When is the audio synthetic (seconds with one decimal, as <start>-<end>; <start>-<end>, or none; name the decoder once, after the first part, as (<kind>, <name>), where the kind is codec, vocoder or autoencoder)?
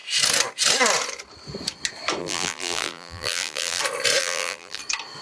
2.2-3.8 (vocoder, BigVGAN v2); 4.2-4.8